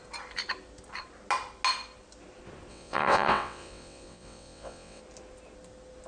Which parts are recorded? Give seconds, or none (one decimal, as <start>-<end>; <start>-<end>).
0.0-2.7; 5.0-6.1